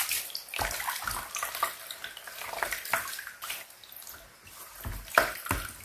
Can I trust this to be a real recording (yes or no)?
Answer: yes